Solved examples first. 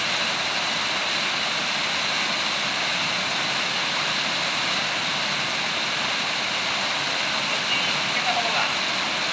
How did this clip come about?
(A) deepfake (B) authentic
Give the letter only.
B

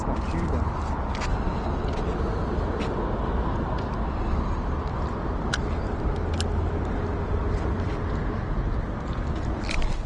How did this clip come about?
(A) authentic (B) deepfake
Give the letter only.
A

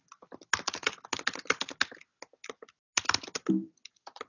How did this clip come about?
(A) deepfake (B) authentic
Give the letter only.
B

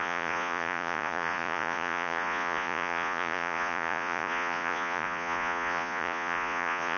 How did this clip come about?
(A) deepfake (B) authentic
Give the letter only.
A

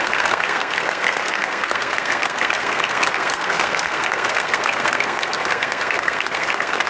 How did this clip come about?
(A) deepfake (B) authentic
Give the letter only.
A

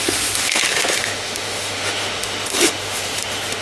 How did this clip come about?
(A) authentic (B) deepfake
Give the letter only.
B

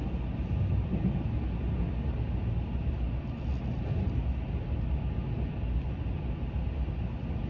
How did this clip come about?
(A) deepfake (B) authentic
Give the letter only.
B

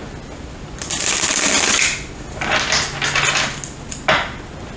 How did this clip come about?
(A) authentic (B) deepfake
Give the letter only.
A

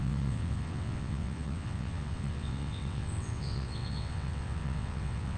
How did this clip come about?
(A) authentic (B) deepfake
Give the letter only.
B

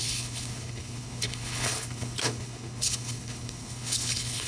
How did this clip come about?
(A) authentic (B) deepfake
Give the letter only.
B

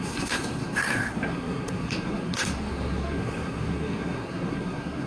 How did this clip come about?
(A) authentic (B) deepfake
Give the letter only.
B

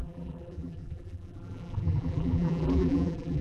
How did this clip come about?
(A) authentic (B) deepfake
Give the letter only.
B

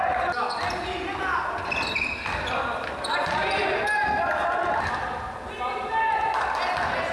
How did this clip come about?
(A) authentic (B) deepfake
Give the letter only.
A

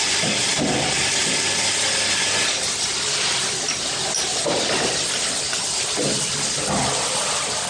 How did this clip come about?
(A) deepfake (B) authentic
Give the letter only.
B